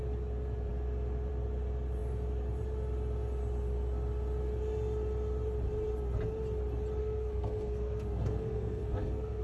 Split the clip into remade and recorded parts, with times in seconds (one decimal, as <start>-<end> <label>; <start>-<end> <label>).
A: 0.0-7.0 recorded; 7.0-9.4 remade